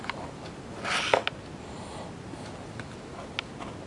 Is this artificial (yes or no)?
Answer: no